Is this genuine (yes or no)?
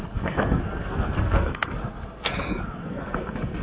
no